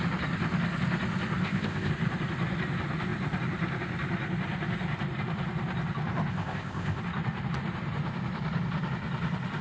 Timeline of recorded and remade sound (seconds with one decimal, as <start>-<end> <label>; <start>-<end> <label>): 0.0-1.4 recorded; 1.4-1.9 remade; 1.9-6.3 recorded; 6.3-7.0 remade; 7.0-9.6 recorded